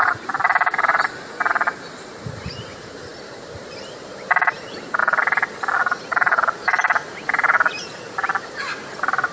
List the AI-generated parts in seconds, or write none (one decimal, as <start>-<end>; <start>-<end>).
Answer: 0.0-0.9; 1.5-5.0; 6.0-9.3